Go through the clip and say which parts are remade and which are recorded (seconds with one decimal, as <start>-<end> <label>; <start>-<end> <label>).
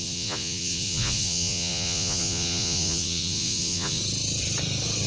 0.0-4.0 remade; 4.0-5.1 recorded